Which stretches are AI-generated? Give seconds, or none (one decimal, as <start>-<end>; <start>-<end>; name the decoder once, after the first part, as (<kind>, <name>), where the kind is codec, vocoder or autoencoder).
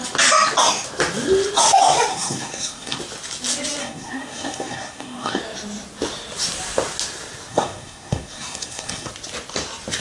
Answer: 2.1-3.0 (codec, SNAC); 3.8-5.4; 7.5-9.1